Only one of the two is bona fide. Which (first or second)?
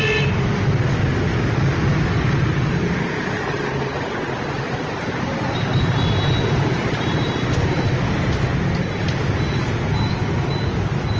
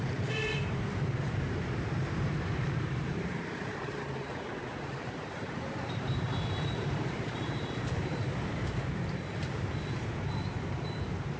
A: first